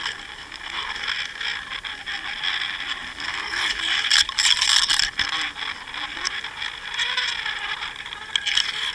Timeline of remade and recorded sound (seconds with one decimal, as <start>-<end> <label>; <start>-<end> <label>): 0.0-8.9 recorded